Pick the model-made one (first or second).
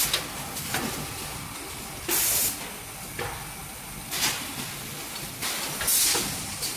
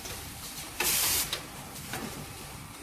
second